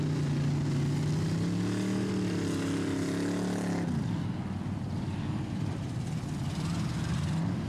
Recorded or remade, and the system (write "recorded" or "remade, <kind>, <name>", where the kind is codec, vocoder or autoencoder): recorded